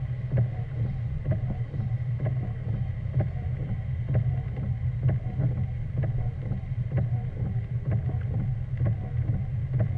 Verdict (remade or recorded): recorded